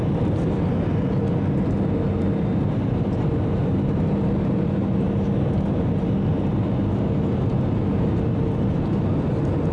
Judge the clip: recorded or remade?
recorded